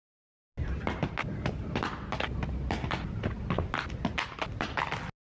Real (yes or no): yes